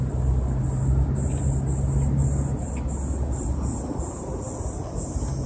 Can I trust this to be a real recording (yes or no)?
yes